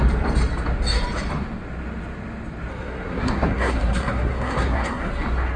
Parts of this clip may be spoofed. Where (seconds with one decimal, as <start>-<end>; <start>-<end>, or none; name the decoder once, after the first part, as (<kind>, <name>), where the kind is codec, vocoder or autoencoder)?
2.7-5.1 (codec, SNAC)